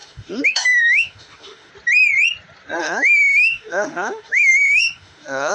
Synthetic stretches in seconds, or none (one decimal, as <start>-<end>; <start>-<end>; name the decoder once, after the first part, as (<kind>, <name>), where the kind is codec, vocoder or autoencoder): 0.0-1.7 (autoencoder, DAC-VAE); 2.8-5.5